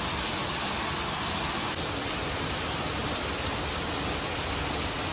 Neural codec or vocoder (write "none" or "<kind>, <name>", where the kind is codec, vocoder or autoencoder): none